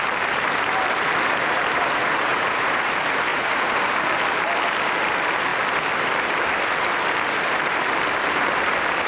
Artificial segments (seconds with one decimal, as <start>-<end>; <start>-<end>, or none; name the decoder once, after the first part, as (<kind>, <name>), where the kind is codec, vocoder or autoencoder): 2.3-2.9 (vocoder, Vocos); 3.3-3.8